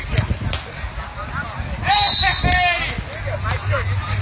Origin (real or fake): real